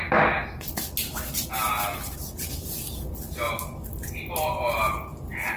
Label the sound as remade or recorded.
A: recorded